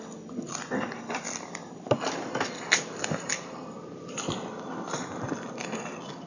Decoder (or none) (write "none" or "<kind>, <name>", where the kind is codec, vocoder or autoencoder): none